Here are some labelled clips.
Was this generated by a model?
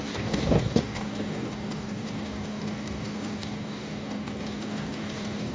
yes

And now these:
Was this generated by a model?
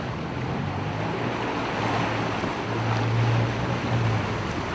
no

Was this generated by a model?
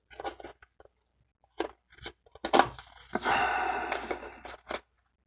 no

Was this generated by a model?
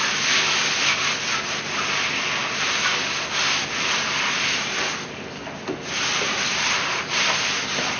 no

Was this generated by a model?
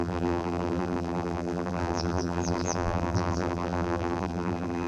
yes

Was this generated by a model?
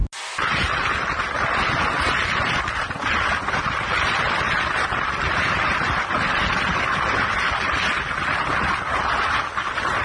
no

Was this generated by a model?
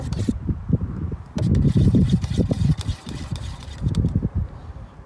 yes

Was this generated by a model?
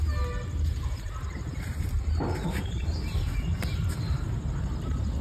yes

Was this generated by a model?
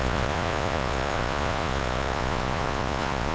yes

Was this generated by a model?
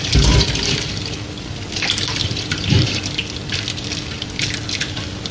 no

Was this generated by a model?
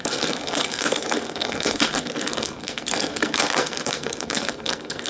yes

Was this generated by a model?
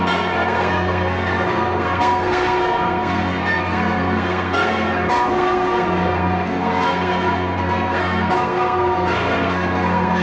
yes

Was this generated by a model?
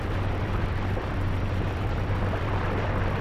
yes